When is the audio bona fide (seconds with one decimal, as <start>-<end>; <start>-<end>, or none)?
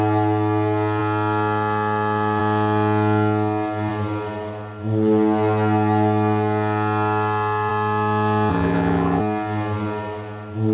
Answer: 0.0-8.5; 9.2-10.7